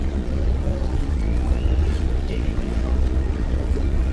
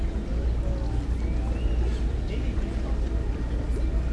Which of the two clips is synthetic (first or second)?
first